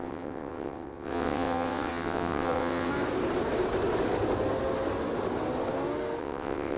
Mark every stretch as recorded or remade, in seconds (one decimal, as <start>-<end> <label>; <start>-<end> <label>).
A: 0.0-2.9 remade; 2.9-6.2 recorded; 6.2-6.8 remade